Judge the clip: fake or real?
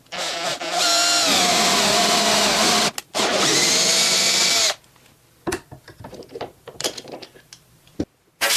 real